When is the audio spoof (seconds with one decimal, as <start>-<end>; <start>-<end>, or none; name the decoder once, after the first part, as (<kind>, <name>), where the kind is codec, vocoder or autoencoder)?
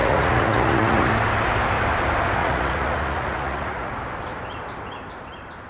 0.0-1.1 (vocoder, Vocos); 2.4-3.9